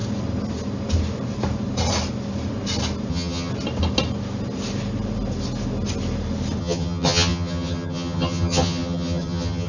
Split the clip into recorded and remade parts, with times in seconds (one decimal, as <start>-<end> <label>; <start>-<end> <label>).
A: 0.0-3.1 recorded; 3.1-3.5 remade; 3.5-6.6 recorded; 6.6-9.7 remade